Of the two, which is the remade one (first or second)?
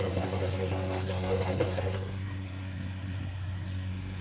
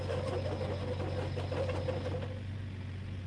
first